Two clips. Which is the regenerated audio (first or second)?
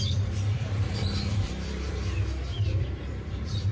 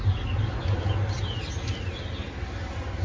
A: first